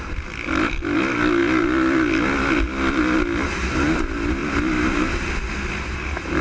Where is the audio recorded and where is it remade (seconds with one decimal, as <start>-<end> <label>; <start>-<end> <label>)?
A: 0.0-6.4 recorded